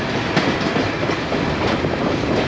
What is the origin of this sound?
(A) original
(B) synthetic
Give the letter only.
A